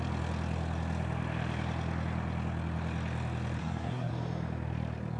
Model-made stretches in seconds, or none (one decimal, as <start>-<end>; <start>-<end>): 3.6-4.1